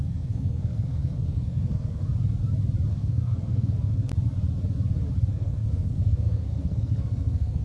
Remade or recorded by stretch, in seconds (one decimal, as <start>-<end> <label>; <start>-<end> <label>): 0.0-2.0 remade; 2.0-2.9 recorded; 2.9-4.1 remade; 4.1-5.3 recorded; 5.3-7.6 remade